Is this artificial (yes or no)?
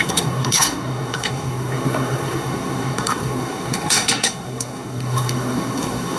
yes